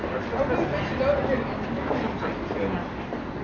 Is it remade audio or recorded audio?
recorded